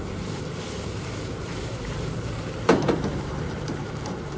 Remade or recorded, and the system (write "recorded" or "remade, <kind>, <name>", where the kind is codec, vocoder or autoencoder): remade, vocoder, BigVGAN v2